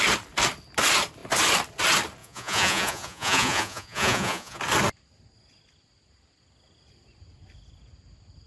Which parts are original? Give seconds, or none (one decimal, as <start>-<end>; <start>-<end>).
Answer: 0.0-2.2; 4.6-8.5